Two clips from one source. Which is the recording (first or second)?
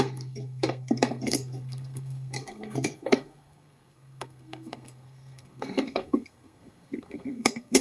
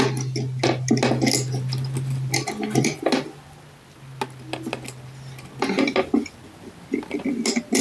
second